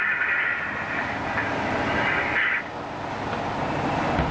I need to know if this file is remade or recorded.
recorded